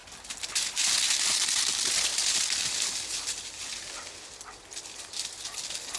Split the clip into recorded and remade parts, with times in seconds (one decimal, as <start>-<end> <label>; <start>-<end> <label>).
0.0-1.6 recorded; 1.6-2.1 remade; 2.1-6.0 recorded